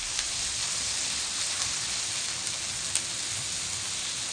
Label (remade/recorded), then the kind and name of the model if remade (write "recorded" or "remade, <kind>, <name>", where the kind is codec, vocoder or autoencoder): recorded